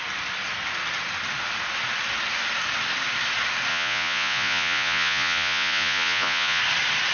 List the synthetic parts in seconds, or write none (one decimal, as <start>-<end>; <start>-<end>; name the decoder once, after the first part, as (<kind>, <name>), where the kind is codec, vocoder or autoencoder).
3.7-6.6 (vocoder, Vocos)